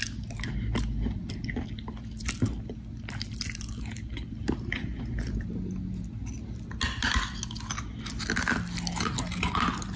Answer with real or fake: real